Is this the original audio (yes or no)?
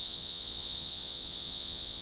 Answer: no